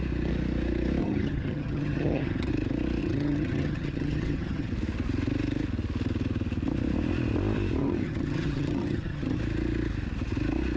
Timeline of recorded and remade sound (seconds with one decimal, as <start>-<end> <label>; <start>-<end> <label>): 0.0-1.0 recorded; 1.0-2.5 remade; 2.5-3.0 recorded; 3.0-4.7 remade; 4.7-7.8 recorded; 7.8-9.4 remade; 9.4-10.8 recorded